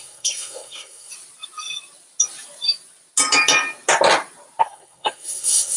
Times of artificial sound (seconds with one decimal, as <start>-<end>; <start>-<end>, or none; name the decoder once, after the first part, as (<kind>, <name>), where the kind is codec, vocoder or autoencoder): 0.0-1.1 (codec, SNAC); 4.6-5.8